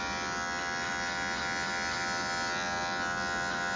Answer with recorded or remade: recorded